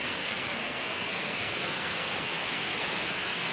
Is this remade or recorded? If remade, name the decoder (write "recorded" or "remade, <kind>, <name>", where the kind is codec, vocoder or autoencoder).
remade, codec, SNAC